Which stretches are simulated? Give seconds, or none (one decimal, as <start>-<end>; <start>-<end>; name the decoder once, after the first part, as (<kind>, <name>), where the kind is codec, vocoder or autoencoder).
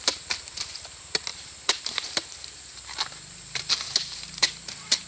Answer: 1.3-4.4 (vocoder, BigVGAN v2)